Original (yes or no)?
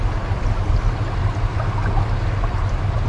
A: yes